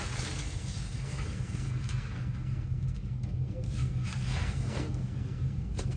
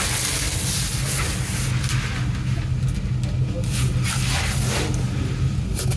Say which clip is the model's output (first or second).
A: first